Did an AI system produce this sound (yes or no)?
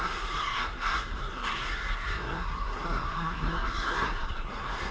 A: yes